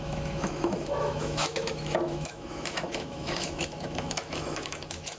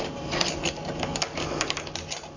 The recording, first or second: second